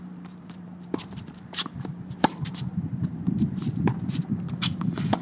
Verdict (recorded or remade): remade